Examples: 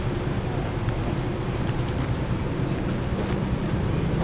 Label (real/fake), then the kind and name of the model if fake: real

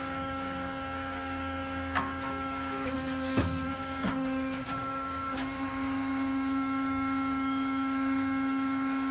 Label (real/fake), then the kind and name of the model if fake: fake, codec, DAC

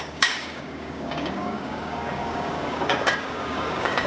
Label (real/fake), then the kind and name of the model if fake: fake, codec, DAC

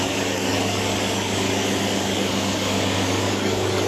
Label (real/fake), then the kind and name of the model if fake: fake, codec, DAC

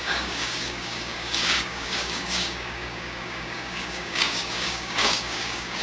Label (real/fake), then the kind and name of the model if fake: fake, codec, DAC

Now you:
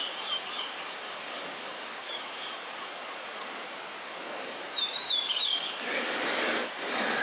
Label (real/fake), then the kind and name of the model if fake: fake, codec, DAC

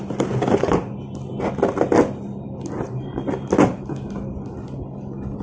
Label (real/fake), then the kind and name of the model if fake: real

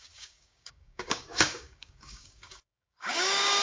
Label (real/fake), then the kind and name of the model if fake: fake, codec, DAC